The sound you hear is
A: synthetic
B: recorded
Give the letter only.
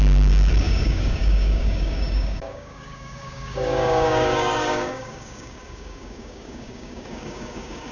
A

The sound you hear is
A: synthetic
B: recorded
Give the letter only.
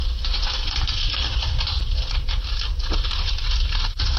B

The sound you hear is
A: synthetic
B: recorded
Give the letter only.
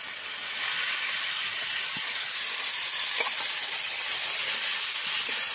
A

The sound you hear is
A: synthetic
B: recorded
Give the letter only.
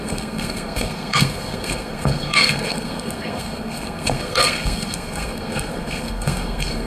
A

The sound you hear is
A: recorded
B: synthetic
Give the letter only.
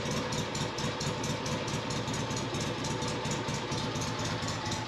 A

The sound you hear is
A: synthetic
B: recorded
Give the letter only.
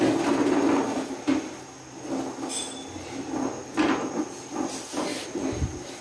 B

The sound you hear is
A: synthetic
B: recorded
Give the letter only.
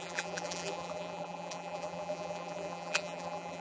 A